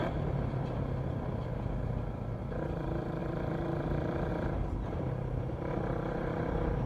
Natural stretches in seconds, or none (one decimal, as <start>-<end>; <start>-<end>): 1.5-2.4